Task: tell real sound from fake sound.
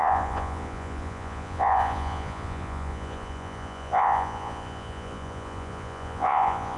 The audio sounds fake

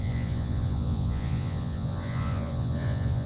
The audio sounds fake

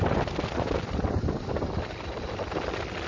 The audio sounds fake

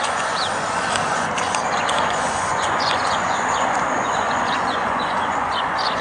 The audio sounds fake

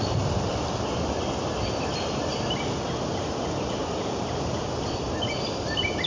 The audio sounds fake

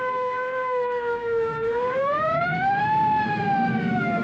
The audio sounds fake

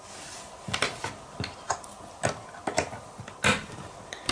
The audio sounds real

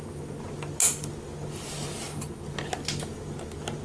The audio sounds real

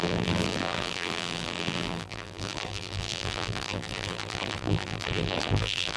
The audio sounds fake